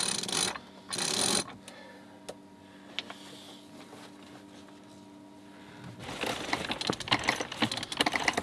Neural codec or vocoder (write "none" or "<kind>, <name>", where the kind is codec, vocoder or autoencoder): none